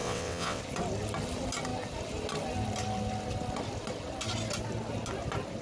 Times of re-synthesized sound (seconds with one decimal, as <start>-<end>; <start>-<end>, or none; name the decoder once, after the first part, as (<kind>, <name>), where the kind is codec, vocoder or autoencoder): 0.0-0.6 (vocoder, WaveNeXt)